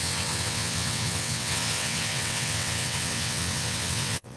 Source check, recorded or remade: remade